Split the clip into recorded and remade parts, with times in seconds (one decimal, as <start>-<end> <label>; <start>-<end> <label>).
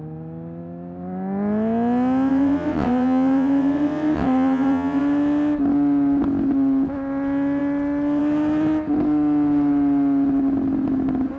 0.0-2.3 recorded; 2.3-5.0 remade; 5.0-11.4 recorded